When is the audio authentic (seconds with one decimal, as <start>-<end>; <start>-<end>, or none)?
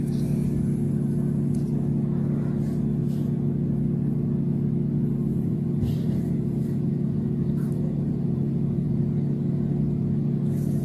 0.0-5.3; 9.0-10.8